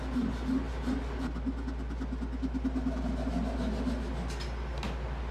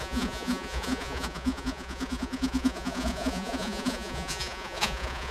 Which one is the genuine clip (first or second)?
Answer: first